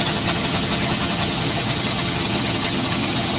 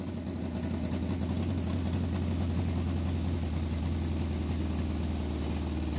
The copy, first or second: first